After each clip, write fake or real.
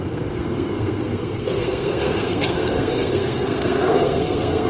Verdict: fake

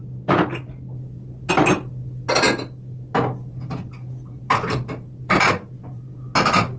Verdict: real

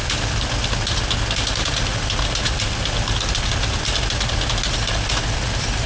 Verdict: real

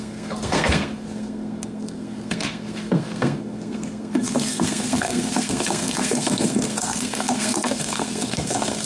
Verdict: fake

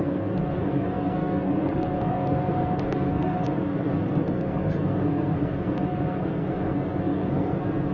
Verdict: fake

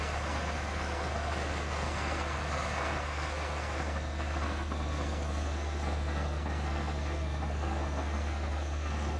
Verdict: fake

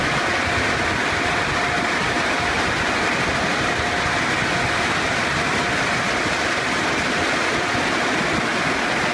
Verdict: real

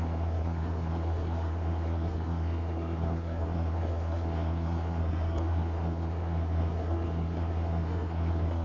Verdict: fake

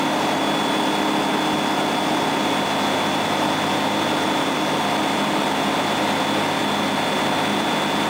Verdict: real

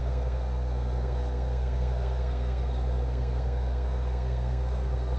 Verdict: fake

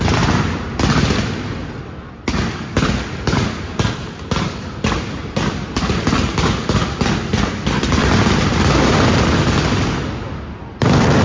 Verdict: real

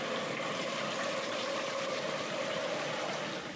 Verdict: real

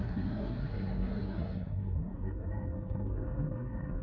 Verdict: fake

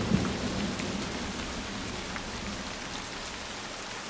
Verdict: real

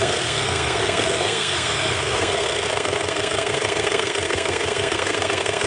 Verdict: fake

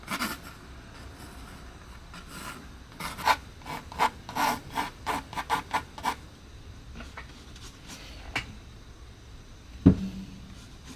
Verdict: real